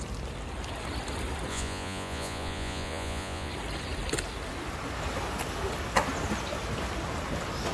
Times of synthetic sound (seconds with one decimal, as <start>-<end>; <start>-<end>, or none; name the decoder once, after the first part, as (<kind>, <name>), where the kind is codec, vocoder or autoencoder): 1.5-3.5 (vocoder, Vocos)